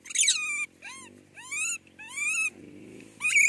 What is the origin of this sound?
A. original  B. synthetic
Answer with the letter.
A